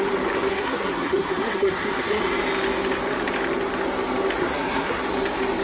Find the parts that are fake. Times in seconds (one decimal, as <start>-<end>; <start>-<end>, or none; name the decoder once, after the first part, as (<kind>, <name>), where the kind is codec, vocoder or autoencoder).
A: 0.5-2.2 (codec, SNAC); 4.4-5.0